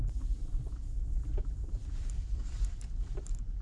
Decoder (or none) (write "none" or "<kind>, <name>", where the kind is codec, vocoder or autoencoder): vocoder, BigVGAN v2